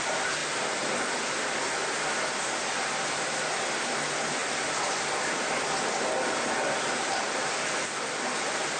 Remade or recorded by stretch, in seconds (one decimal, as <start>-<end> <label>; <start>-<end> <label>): 0.0-8.8 recorded